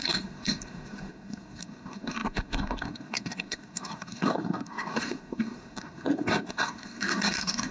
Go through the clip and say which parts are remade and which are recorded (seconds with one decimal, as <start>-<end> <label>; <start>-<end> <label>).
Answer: 0.0-7.7 remade